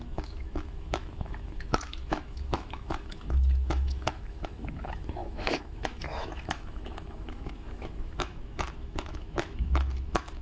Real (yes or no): no